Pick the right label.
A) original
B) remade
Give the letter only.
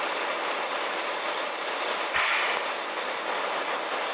A